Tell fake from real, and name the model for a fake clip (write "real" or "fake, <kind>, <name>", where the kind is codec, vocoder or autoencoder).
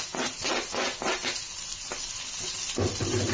real